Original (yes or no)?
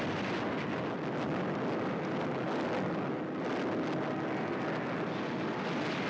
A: yes